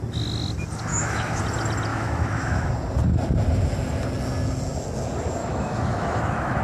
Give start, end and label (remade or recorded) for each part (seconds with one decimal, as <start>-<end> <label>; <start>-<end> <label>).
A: 0.0-0.9 recorded; 0.9-1.4 remade; 1.4-1.9 recorded; 1.9-2.7 remade; 2.7-5.4 recorded; 5.4-6.6 remade